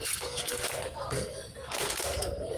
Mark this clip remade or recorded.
remade